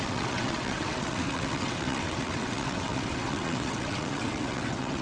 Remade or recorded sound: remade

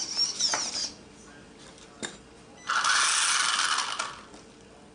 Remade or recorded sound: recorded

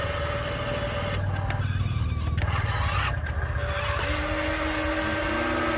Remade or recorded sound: recorded